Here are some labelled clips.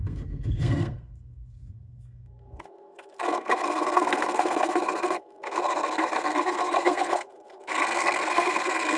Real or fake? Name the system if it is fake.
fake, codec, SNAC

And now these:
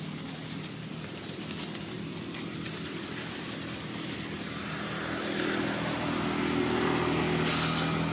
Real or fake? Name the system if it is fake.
real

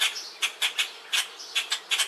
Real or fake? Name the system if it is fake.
real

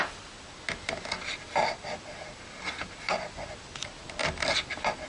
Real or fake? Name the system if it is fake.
real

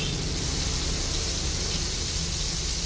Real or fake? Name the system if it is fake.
real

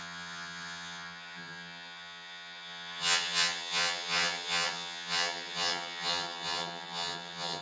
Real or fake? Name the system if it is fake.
fake, vocoder, HiFi-GAN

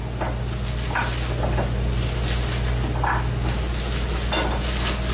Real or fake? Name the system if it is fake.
real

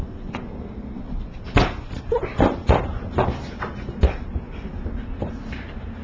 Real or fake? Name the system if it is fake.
real